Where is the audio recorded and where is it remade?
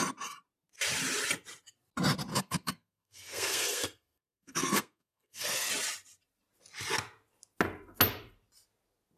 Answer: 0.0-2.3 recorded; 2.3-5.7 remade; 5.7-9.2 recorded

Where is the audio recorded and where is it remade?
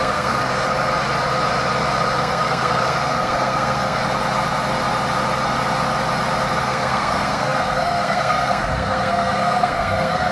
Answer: 0.0-0.5 remade; 0.5-2.2 recorded; 2.2-4.0 remade; 4.0-6.6 recorded; 6.6-10.3 remade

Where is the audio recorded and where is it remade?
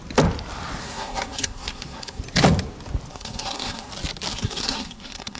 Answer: 0.0-0.8 recorded; 0.8-2.2 remade; 2.2-3.1 recorded; 3.1-3.9 remade; 3.9-4.3 recorded; 4.3-5.4 remade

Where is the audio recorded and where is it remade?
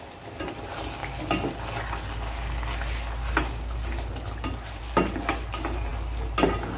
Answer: 0.0-6.8 recorded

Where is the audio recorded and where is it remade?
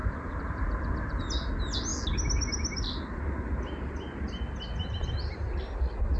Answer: 0.0-6.2 recorded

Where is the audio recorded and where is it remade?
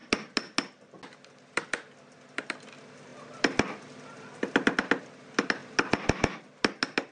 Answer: 0.0-7.1 recorded